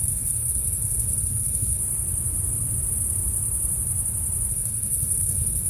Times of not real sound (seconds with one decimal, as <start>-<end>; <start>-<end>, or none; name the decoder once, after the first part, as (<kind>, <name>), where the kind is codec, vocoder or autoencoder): 0.0-1.8 (codec, SNAC); 4.5-5.7